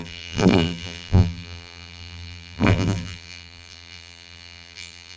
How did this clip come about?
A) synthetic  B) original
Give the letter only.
A